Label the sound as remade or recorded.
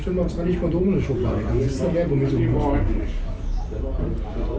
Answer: recorded